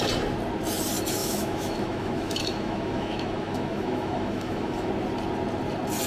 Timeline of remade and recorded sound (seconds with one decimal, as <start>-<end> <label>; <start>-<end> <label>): 0.0-1.2 recorded; 1.2-4.9 remade; 4.9-6.1 recorded